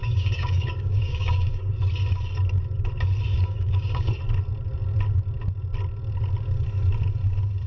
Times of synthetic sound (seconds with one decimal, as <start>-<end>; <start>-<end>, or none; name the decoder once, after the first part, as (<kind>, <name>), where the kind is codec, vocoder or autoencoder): 0.0-1.7 (codec, DAC); 3.3-4.1